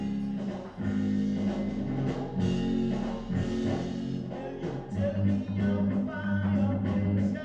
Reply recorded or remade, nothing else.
recorded